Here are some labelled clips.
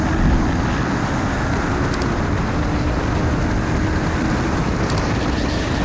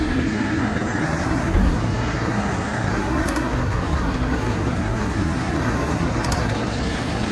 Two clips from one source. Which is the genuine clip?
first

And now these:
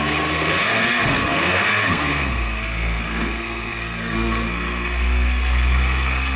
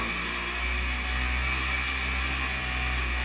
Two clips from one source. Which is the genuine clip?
second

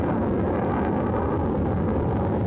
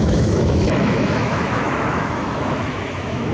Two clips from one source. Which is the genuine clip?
first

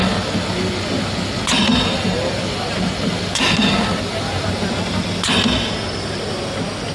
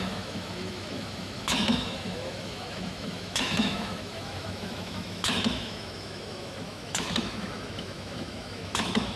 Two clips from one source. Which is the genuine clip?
first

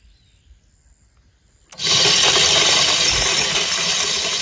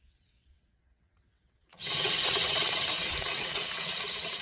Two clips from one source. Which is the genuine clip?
first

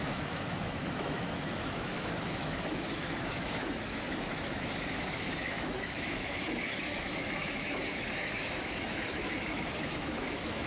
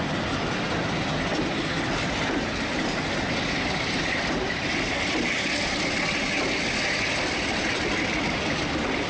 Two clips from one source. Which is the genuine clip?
second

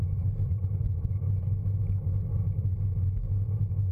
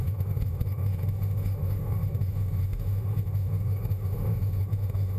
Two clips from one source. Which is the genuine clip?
first